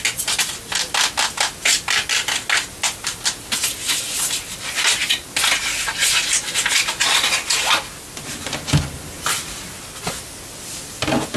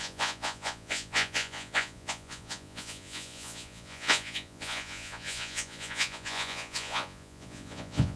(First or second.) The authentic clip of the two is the first